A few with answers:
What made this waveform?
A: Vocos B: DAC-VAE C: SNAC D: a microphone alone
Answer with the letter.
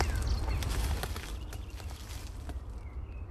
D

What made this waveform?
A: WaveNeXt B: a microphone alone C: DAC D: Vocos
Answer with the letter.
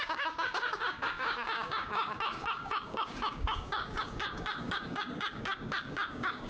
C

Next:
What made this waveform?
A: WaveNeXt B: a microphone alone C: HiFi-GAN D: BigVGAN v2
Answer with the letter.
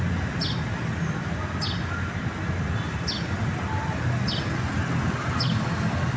B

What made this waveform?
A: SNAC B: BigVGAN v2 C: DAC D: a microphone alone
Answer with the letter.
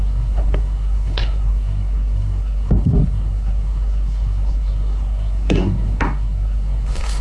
A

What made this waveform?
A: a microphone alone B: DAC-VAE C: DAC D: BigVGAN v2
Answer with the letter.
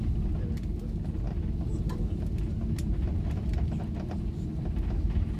A